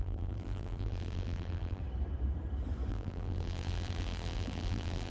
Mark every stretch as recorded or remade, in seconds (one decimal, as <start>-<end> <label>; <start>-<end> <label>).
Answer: 0.0-1.8 remade; 1.8-2.9 recorded; 2.9-5.1 remade